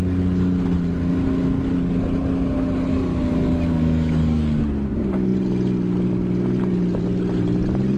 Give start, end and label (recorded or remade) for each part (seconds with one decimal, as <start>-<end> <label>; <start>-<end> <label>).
0.0-2.9 recorded; 2.9-4.6 remade; 4.6-8.0 recorded